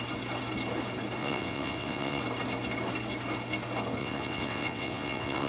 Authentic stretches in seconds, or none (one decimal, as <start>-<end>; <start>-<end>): 0.0-1.2; 2.2-4.0